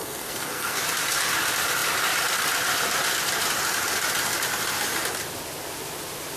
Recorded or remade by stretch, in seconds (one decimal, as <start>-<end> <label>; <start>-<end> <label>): 0.0-0.8 remade; 0.8-6.4 recorded